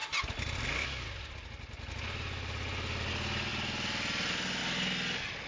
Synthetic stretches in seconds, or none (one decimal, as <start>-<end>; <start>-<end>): none